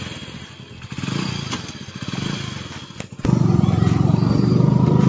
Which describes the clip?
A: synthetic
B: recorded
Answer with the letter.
B